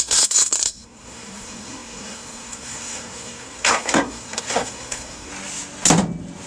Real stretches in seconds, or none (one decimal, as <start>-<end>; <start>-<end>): 5.3-6.5